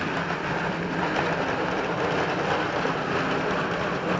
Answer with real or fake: real